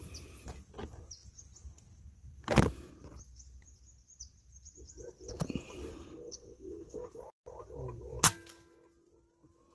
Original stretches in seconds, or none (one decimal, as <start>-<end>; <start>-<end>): 0.0-5.9; 7.2-9.7